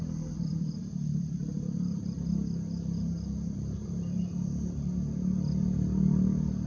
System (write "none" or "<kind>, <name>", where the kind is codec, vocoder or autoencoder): none